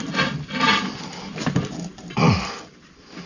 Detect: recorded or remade remade